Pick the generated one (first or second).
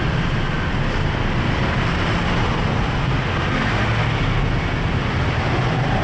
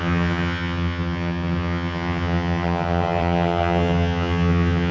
second